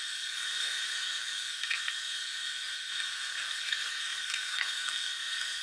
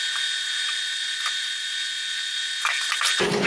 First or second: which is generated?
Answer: first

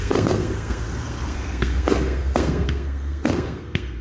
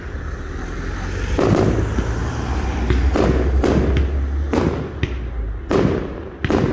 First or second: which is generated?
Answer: first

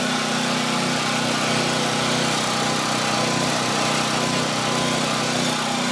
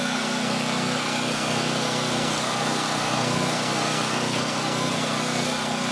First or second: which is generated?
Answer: second